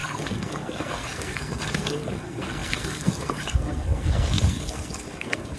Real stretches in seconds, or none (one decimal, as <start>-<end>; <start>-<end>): none